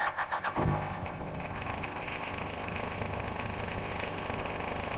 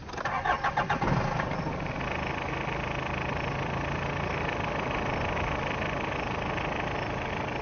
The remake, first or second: first